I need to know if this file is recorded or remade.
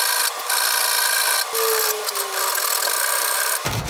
recorded